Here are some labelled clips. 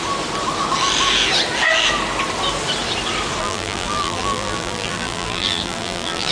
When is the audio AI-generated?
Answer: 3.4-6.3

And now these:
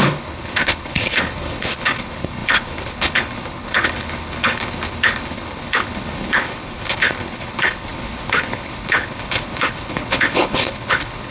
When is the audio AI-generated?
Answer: 0.0-11.3